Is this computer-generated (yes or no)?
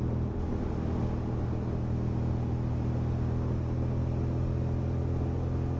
no